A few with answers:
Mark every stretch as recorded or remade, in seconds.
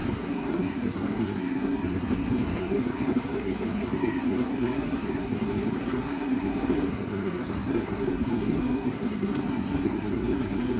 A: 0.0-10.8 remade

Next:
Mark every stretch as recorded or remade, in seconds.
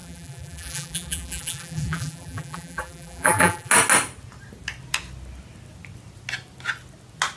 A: 0.0-3.7 remade; 3.7-7.4 recorded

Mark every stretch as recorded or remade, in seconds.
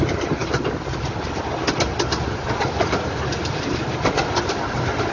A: 0.0-5.1 recorded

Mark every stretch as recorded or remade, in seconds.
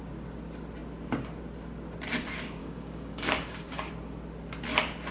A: 0.0-2.6 recorded; 2.6-3.9 remade; 3.9-5.1 recorded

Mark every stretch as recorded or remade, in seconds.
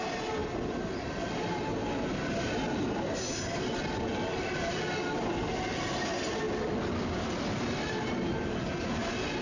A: 0.0-9.4 recorded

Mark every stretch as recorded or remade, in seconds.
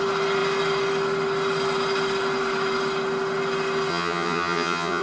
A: 0.0-3.9 recorded; 3.9-5.0 remade